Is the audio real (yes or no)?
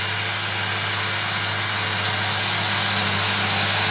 yes